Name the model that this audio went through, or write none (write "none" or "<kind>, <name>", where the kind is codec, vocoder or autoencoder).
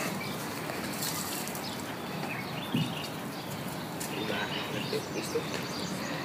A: none